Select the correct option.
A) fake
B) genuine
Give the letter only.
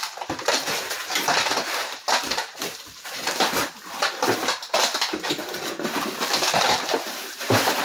A